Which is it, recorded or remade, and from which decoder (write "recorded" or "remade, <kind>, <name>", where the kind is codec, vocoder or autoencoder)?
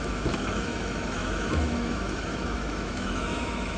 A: remade, autoencoder, DAC-VAE